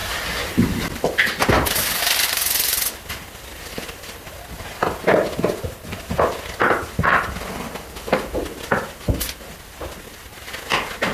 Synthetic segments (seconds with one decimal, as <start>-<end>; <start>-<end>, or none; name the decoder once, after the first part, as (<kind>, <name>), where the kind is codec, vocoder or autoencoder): 0.0-4.4 (vocoder, BigVGAN v2)